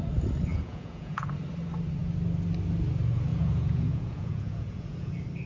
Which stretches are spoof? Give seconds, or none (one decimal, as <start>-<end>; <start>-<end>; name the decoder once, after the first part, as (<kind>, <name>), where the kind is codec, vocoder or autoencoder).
0.5-1.3 (vocoder, Vocos); 3.3-5.1